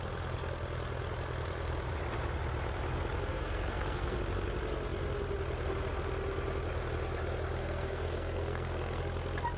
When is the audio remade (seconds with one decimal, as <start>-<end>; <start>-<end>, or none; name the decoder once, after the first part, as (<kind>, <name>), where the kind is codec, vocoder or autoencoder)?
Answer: 3.3-4.2 (codec, SNAC); 7.6-9.0